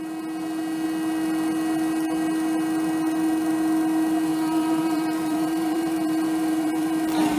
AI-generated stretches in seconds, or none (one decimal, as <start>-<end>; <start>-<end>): 4.3-6.9